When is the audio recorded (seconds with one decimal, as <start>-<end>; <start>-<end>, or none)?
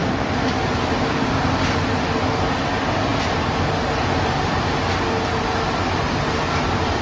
0.0-7.0